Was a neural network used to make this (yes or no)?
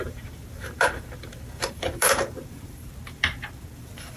yes